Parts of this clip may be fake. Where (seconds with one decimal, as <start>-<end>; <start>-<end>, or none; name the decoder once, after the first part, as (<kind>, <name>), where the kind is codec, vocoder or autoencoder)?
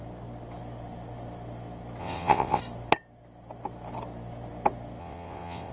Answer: 2.0-2.6 (vocoder, WaveNeXt); 5.0-5.7